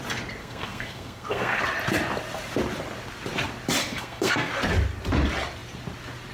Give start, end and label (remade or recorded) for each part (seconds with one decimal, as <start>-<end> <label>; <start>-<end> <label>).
0.0-0.4 recorded; 0.4-1.6 remade; 1.6-3.8 recorded; 3.8-4.5 remade; 4.5-6.3 recorded